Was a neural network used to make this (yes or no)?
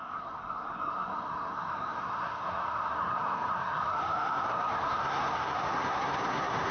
yes